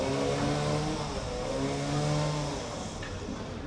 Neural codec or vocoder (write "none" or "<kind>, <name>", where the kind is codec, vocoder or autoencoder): none